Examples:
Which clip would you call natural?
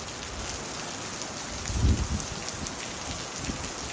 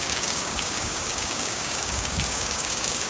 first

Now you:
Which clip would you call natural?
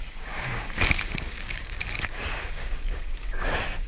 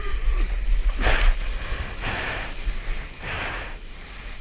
second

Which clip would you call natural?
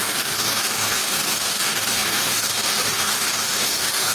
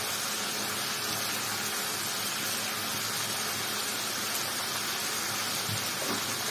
second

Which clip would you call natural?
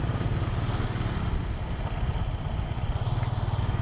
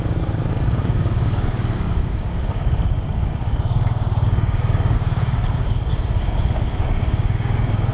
first